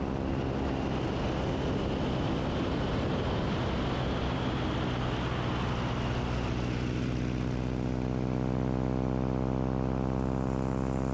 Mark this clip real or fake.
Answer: real